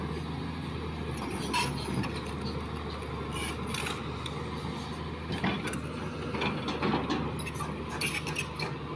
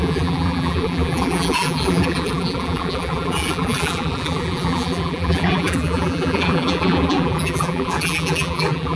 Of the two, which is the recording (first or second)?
first